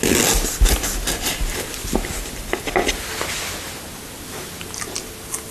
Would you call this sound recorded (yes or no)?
yes